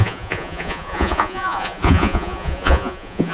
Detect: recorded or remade remade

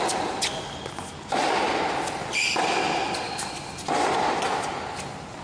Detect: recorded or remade recorded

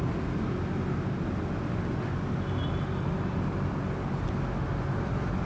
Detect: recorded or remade recorded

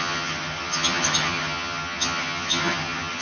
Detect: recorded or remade remade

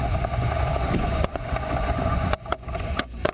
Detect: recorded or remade remade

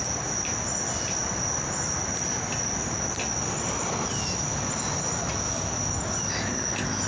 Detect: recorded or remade recorded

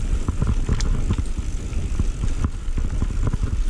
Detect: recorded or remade recorded